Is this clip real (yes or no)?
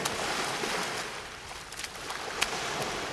yes